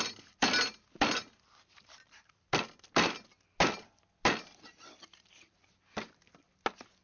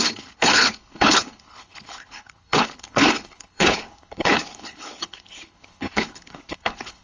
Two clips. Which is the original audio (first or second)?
first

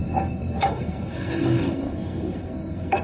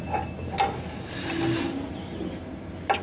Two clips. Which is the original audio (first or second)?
second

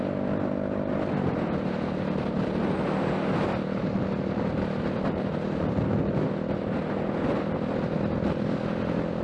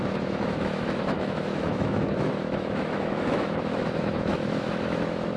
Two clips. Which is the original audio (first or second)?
first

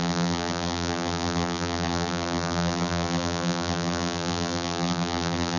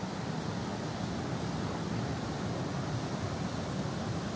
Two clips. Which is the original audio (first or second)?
second